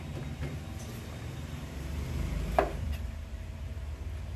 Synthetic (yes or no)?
yes